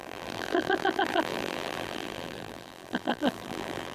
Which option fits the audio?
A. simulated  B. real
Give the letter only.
A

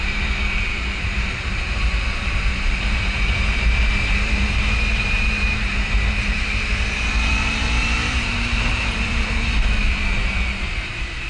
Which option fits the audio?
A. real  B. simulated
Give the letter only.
B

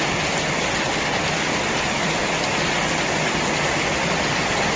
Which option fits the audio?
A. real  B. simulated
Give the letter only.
A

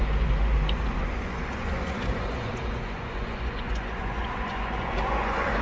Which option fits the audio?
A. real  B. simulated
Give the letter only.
B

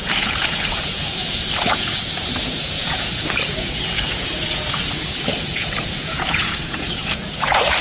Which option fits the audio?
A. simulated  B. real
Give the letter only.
A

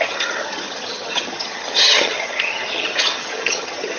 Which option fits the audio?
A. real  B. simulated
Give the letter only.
B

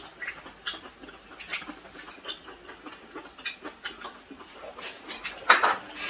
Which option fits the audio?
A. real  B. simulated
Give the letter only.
A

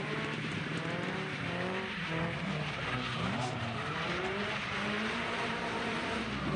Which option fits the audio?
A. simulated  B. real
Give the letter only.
A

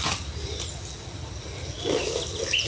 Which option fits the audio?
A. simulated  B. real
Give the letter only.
B